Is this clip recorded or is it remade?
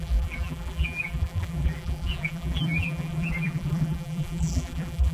remade